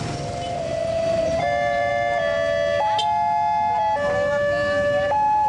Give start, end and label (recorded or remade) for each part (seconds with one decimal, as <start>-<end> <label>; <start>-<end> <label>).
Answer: 0.0-0.7 recorded; 0.7-1.9 remade; 1.9-5.5 recorded